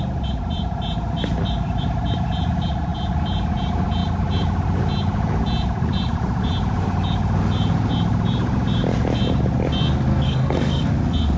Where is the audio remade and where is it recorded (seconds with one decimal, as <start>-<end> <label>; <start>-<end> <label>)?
0.0-10.1 recorded; 10.1-10.9 remade; 10.9-11.4 recorded